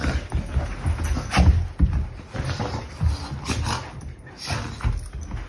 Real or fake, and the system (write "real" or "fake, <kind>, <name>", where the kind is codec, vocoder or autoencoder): real